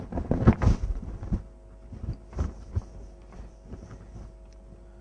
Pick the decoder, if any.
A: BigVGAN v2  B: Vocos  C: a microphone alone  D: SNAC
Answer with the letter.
C